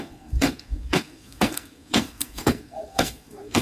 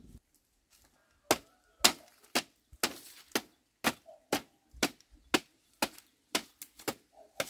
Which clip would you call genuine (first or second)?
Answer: second